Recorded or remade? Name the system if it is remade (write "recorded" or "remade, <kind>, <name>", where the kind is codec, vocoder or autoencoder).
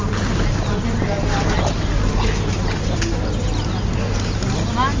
recorded